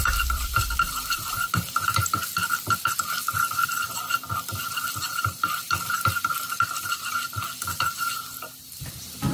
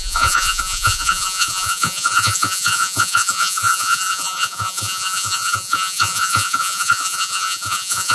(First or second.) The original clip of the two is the first